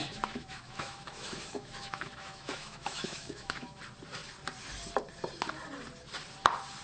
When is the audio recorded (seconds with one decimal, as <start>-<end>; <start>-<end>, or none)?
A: 3.8-6.8